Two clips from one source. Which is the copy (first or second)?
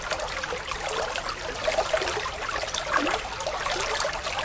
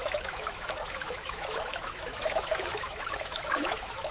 second